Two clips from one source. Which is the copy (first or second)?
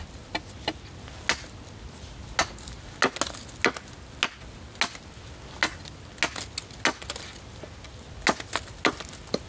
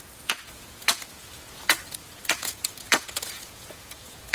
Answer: second